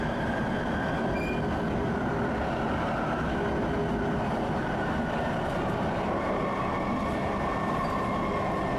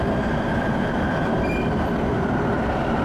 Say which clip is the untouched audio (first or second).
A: first